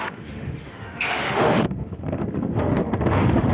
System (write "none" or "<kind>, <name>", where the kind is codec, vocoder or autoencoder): autoencoder, DAC-VAE